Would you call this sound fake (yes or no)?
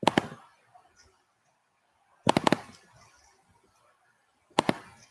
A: no